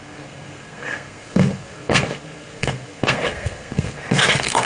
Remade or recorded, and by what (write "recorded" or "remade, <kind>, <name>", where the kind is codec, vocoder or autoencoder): remade, codec, SNAC